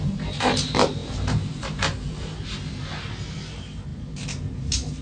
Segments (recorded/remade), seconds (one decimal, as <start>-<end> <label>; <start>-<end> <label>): 0.0-5.0 remade